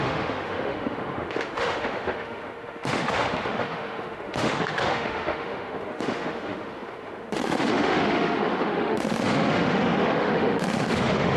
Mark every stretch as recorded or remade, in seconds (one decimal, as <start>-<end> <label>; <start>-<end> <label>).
0.0-11.4 remade